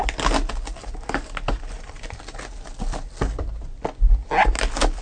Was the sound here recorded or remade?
recorded